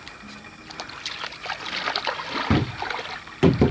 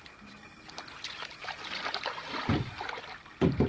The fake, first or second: second